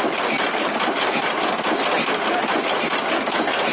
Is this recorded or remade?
recorded